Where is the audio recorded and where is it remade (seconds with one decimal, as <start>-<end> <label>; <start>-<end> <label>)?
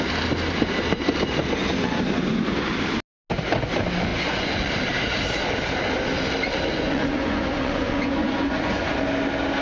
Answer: 0.0-4.1 recorded; 4.1-4.7 remade; 4.7-6.7 recorded; 6.7-9.0 remade; 9.0-9.6 recorded